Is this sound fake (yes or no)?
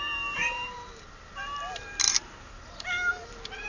no